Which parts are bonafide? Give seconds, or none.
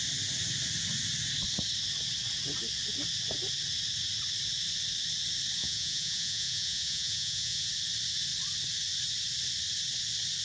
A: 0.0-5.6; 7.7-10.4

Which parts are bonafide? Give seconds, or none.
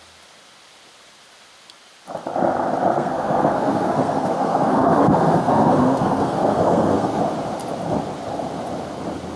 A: 0.0-2.9; 7.2-9.4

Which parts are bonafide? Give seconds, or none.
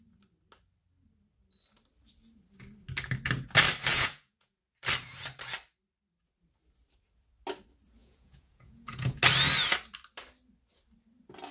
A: 0.0-3.9; 4.9-8.0; 9.2-11.5